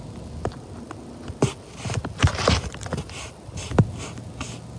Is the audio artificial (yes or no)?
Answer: no